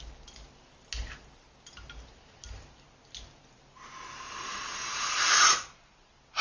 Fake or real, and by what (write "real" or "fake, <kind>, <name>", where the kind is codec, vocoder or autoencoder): real